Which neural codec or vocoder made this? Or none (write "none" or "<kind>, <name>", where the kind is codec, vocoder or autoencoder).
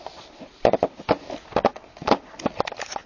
none